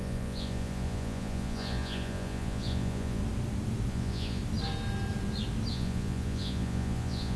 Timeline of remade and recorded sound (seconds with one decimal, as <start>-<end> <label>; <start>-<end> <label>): 0.0-3.2 remade; 3.2-3.9 recorded; 3.9-4.4 remade; 4.4-5.7 recorded; 5.7-7.4 remade